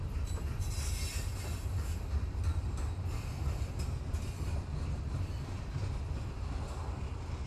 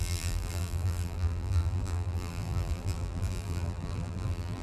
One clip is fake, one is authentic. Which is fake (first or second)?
second